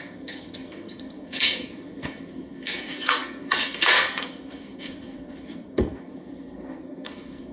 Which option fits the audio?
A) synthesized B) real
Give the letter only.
A